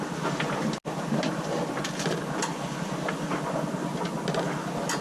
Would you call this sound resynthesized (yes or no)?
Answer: no